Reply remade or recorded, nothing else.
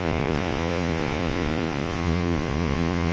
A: remade